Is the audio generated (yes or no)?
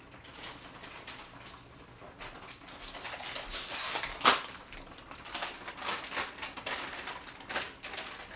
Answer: no